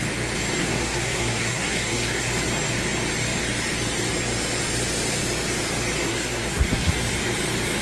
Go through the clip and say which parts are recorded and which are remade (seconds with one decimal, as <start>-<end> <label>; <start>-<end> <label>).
0.0-0.6 recorded; 0.6-2.4 remade; 2.4-6.0 recorded; 6.0-6.9 remade; 6.9-7.8 recorded